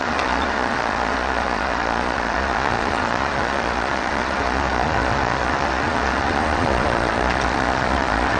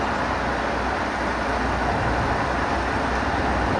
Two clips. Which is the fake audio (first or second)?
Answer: first